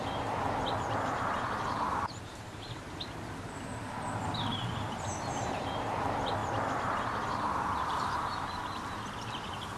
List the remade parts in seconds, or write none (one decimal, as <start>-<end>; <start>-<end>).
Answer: 0.0-3.7; 5.2-6.4; 7.8-9.8